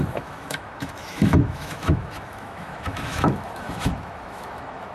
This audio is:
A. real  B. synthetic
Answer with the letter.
B